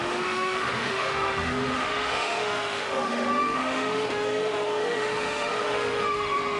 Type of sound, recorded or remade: remade